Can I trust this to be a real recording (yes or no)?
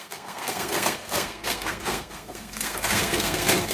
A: no